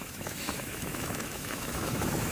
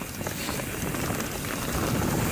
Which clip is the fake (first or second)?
first